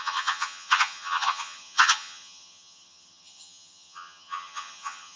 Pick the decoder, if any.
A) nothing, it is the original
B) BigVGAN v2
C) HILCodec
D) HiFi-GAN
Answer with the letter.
D